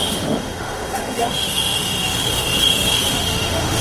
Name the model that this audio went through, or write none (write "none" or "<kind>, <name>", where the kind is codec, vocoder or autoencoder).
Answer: autoencoder, DAC-VAE